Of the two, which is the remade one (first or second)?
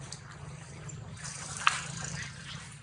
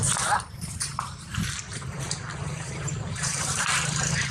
second